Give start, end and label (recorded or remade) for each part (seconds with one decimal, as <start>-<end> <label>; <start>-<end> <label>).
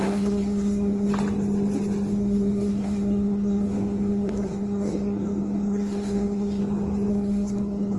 0.0-1.1 remade; 1.1-2.1 recorded; 2.1-6.6 remade; 6.6-7.1 recorded; 7.1-8.0 remade